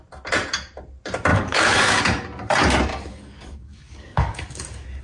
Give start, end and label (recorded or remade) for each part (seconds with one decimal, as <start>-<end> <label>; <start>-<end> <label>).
0.0-1.3 recorded; 1.3-2.0 remade; 2.0-2.9 recorded; 2.9-5.0 remade